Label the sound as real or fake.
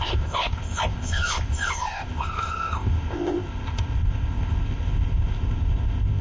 fake